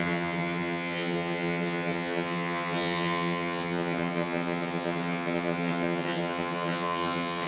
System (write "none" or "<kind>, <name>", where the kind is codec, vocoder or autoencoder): vocoder, HiFi-GAN